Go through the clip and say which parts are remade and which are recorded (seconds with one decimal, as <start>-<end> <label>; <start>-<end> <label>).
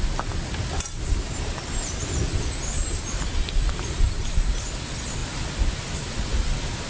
0.0-6.9 recorded